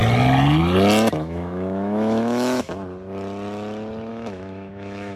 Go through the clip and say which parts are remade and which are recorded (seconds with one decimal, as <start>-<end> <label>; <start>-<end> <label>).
0.0-1.1 recorded; 1.1-2.7 remade; 2.7-4.1 recorded; 4.1-5.2 remade